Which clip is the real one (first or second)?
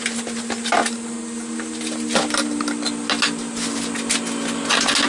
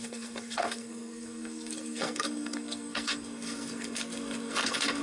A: first